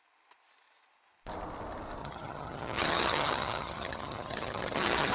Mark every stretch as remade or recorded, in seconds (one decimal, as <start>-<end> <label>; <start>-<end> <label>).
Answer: 0.0-2.0 recorded; 2.0-5.1 remade